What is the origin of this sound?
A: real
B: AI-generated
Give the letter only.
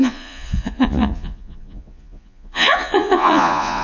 B